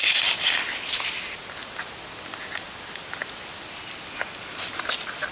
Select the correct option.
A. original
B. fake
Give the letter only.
A